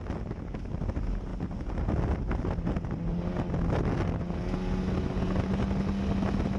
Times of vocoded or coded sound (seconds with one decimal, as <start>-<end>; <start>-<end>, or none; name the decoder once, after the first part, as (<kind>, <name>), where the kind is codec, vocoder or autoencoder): none